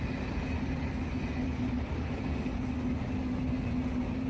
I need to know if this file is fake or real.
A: real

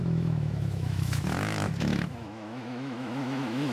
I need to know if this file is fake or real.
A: fake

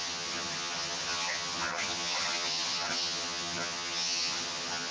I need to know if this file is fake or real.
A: fake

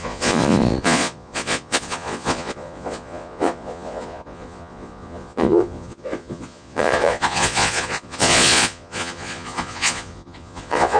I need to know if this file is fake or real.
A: fake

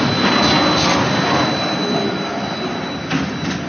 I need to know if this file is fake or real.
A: real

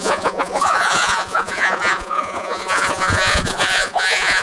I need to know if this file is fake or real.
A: fake